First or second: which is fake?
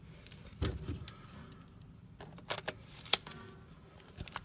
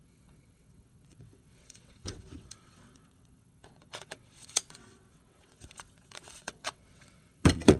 second